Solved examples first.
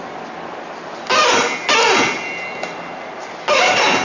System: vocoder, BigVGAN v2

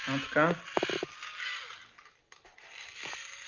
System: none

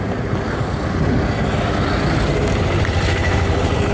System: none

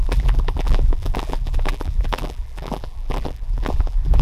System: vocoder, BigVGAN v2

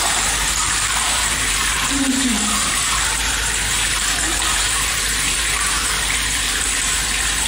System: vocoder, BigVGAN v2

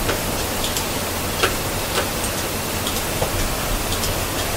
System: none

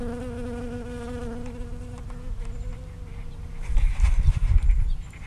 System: none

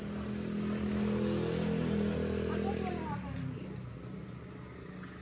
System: none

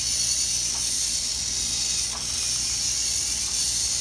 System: none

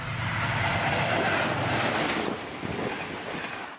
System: none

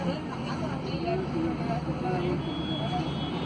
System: none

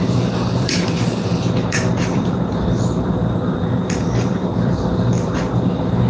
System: vocoder, BigVGAN v2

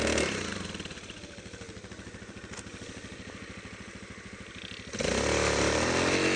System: none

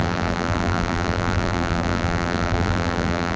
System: vocoder, BigVGAN v2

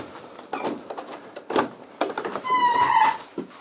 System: none